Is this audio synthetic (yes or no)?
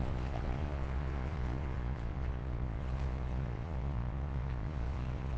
yes